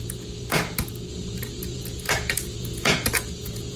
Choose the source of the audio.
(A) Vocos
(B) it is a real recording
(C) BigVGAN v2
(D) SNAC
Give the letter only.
A